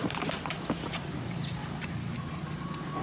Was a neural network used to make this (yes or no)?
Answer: no